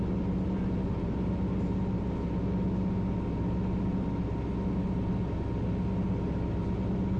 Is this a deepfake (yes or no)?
no